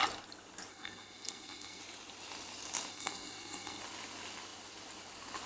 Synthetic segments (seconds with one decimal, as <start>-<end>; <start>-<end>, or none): 0.7-1.8; 2.9-3.8